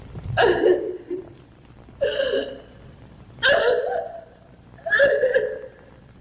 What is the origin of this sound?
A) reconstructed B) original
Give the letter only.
A